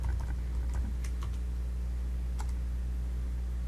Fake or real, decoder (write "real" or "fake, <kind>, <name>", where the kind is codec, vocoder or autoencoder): real